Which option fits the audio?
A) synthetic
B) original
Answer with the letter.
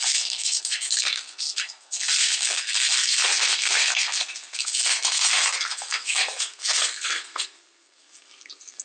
A